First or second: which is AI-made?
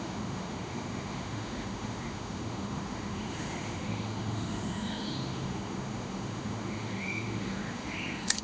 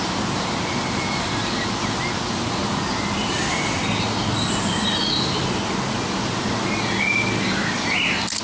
first